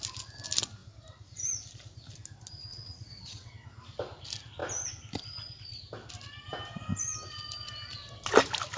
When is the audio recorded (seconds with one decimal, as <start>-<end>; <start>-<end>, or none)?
0.0-2.7; 3.5-8.8